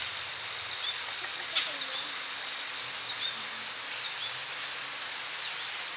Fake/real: fake